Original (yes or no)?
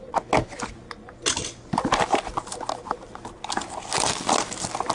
yes